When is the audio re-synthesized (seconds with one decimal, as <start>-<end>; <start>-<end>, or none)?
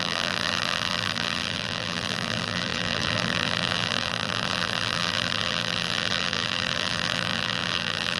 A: 0.0-8.2